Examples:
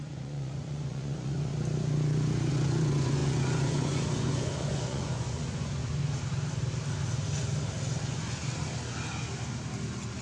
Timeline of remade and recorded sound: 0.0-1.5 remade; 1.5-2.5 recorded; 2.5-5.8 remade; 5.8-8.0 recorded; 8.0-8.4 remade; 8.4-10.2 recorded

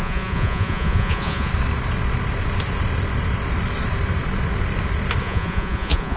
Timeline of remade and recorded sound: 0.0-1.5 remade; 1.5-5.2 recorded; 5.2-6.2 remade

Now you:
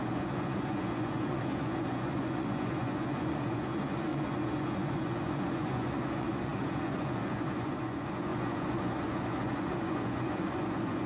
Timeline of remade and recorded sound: 0.0-11.1 remade

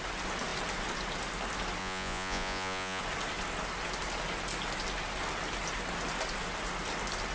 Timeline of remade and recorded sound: 0.0-1.8 recorded; 1.8-3.0 remade; 3.0-7.3 recorded

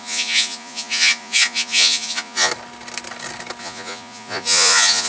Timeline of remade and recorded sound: 0.0-2.5 remade; 2.5-3.6 recorded; 3.6-5.1 remade

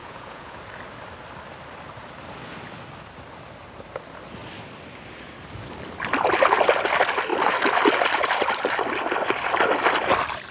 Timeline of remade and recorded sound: 0.0-0.6 remade; 0.6-10.5 recorded

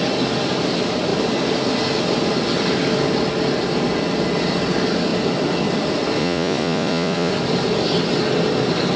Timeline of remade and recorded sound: 0.0-6.2 recorded; 6.2-7.3 remade; 7.3-9.0 recorded

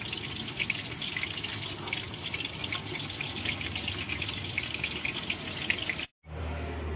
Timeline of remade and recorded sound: 0.0-7.0 recorded